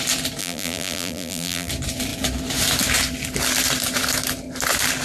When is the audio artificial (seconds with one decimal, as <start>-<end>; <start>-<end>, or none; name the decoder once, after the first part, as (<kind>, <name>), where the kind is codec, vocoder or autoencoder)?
0.4-1.7 (vocoder, BigVGAN v2)